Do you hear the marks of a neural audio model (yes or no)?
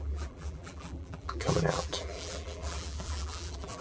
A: yes